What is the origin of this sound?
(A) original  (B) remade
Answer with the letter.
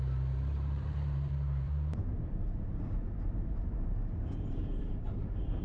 B